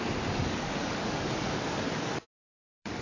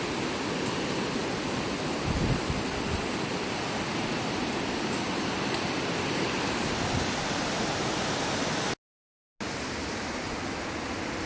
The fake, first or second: first